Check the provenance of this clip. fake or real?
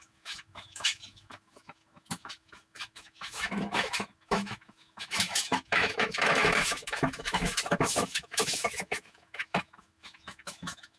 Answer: fake